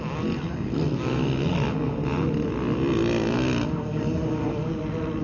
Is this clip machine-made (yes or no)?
no